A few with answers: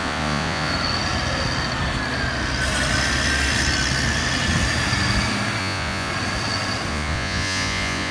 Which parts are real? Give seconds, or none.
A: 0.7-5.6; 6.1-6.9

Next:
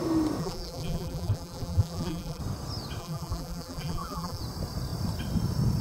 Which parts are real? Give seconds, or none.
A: 0.0-0.4; 2.4-3.0; 4.4-5.8

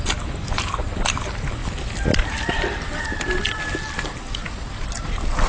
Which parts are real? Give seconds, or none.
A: 0.0-5.5

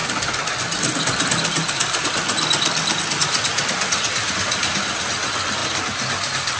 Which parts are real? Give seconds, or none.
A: 0.0-6.6